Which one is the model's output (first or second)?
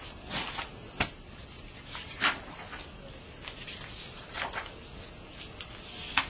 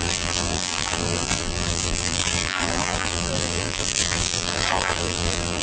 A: second